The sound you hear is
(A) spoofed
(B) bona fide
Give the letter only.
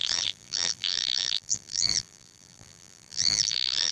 A